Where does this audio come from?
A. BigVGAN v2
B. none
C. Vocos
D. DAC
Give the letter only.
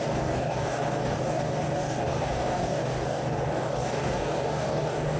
D